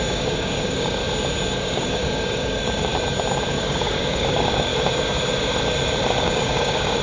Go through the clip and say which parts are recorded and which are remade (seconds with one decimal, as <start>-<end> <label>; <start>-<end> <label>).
0.0-1.0 remade; 1.0-1.5 recorded; 1.5-2.9 remade; 2.9-3.5 recorded; 3.5-4.7 remade; 4.7-6.2 recorded; 6.2-7.0 remade